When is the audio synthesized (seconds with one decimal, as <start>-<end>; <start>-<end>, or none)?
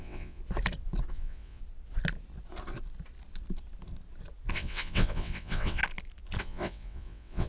0.0-0.4; 1.1-1.6; 4.5-5.8; 6.4-7.5